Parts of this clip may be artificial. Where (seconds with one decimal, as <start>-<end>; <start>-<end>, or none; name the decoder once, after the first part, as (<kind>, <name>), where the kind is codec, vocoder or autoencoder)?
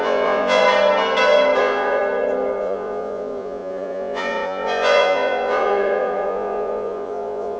0.0-0.6 (vocoder, Vocos); 1.6-2.0; 2.6-7.6